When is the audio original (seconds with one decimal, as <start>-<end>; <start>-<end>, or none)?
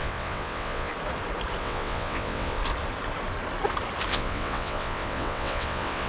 0.9-1.6; 2.6-4.1